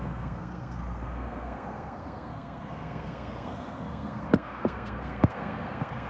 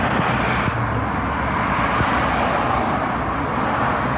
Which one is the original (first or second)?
second